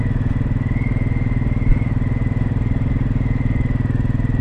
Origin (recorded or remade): recorded